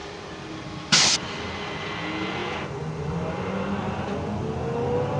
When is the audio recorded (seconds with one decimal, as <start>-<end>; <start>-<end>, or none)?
1.7-5.2